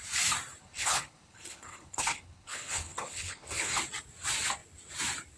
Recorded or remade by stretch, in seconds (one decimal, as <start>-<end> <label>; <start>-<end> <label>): 0.0-0.6 recorded; 0.6-3.8 remade; 3.8-5.4 recorded